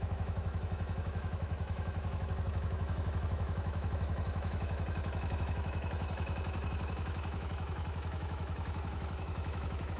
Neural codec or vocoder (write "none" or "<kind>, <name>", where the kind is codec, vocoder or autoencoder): autoencoder, DAC-VAE